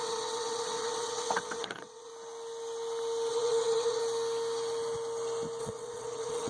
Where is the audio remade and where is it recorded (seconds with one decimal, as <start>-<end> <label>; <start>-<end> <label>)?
0.0-2.1 remade; 2.1-3.3 recorded; 3.3-4.0 remade; 4.0-5.6 recorded; 5.6-6.5 remade